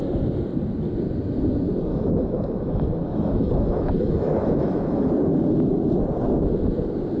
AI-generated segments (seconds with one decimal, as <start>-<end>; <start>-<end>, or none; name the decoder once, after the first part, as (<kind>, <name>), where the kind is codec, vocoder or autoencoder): 1.9-5.1 (autoencoder, DAC-VAE)